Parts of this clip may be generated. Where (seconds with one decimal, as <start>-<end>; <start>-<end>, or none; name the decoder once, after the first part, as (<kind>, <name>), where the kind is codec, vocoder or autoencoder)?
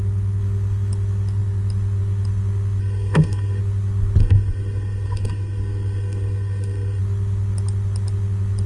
2.8-3.6 (codec, SNAC); 4.2-7.0